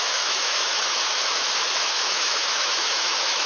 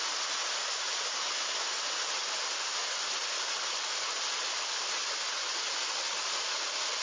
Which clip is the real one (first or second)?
second